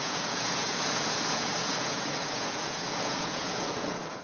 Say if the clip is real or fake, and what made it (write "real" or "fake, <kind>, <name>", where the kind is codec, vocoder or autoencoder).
fake, vocoder, Vocos